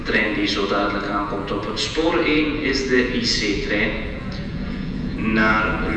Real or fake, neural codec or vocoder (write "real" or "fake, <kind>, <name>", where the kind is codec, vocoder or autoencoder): fake, vocoder, Vocos